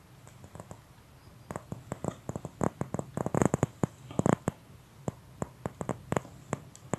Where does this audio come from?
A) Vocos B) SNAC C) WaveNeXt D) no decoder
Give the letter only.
D